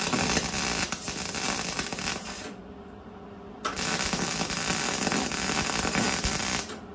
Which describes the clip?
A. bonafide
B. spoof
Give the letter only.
A